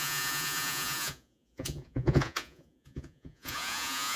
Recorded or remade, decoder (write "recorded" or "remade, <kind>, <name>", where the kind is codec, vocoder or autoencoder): remade, vocoder, Vocos